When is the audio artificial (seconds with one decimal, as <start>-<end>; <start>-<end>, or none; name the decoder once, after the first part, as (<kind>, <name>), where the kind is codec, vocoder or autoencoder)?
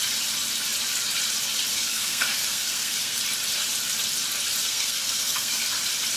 1.7-3.2 (codec, SNAC); 4.6-5.6